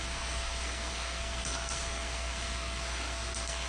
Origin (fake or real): fake